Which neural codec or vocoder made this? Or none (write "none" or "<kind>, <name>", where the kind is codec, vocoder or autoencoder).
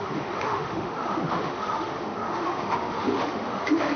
autoencoder, DAC-VAE